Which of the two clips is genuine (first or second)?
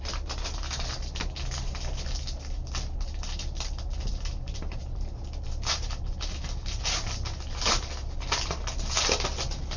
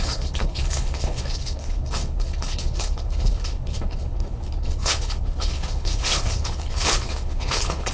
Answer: first